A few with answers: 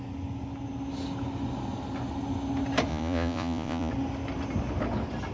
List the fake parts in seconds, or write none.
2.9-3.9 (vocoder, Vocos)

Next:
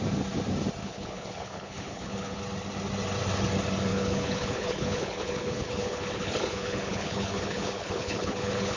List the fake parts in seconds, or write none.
0.8-2.4 (codec, HILCodec); 3.9-8.8

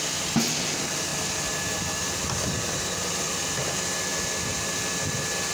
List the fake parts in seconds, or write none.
none

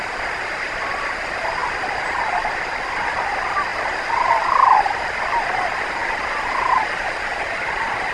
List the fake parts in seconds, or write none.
none

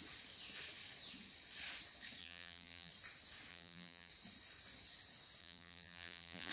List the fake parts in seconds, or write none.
2.2-2.9 (vocoder, BigVGAN v2); 3.5-4.1; 5.4-6.5